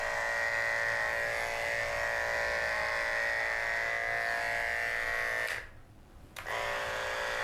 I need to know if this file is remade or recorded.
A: recorded